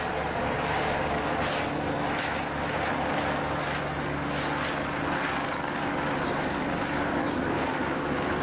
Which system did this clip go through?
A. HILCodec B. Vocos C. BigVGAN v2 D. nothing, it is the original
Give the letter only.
D